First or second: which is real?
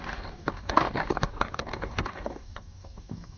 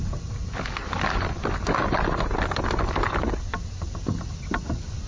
second